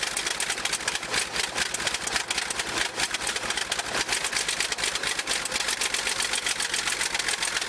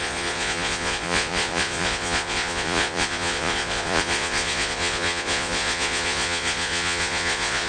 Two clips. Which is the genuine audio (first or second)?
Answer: first